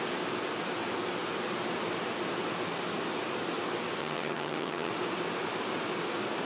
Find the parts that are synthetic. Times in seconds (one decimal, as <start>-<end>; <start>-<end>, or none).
4.0-4.9